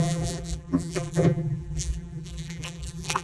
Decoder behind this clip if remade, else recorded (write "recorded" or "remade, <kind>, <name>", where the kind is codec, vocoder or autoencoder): remade, vocoder, BigVGAN v2